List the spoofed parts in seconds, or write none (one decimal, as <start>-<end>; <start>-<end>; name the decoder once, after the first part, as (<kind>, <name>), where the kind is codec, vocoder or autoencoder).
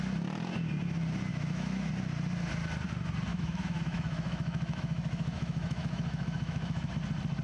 1.3-1.9 (autoencoder, DAC-VAE); 3.3-6.9